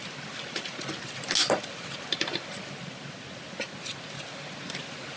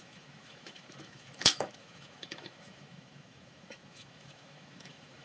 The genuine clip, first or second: first